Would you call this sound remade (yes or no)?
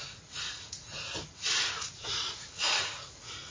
yes